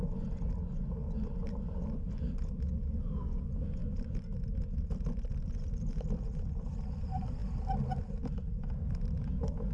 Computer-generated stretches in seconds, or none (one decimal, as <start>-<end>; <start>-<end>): none